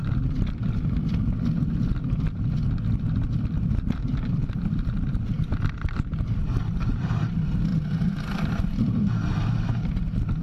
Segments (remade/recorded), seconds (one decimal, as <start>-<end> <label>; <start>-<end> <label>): 0.0-10.4 recorded